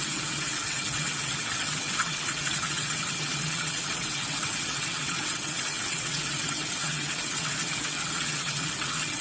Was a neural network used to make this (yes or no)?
yes